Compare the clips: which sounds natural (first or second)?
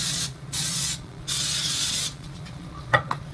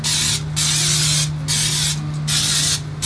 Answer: second